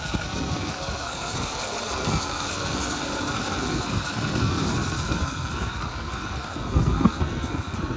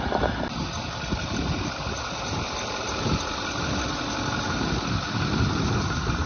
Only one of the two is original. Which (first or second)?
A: second